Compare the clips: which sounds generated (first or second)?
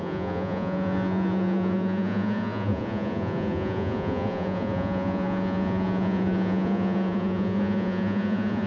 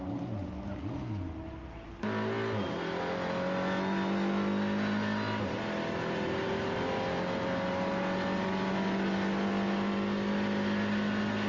first